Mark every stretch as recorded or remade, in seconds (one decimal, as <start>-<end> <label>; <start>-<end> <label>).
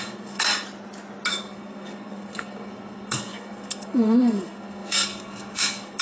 0.0-0.5 remade; 0.5-1.3 recorded; 1.3-6.0 remade